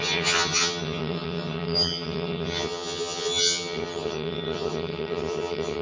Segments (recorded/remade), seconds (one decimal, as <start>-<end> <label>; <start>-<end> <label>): 0.0-5.8 remade